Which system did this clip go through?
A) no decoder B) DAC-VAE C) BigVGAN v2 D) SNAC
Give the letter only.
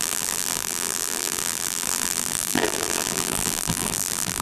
C